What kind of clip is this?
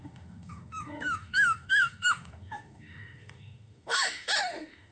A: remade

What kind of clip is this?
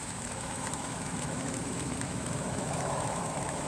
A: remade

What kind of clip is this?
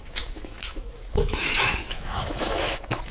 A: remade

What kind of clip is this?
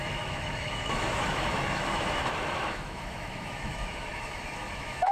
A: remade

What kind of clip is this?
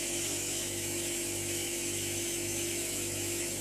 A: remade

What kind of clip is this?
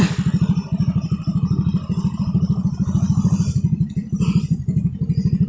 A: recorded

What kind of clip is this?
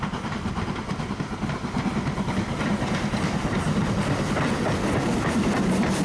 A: recorded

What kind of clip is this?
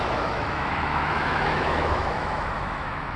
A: remade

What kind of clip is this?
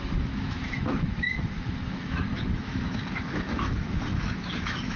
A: remade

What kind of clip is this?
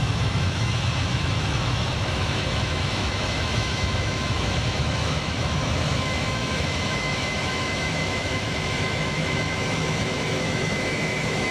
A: remade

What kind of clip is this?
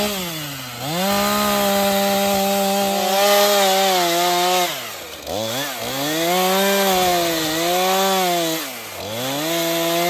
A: recorded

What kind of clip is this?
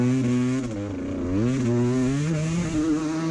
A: recorded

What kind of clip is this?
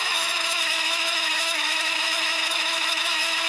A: remade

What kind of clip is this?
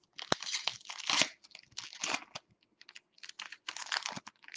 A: recorded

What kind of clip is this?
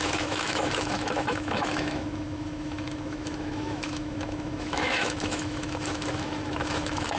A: remade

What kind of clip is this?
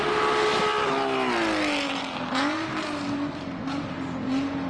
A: recorded